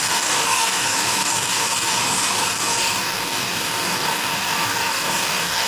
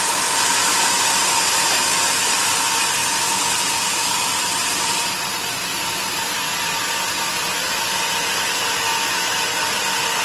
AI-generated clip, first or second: first